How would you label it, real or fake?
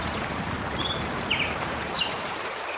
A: fake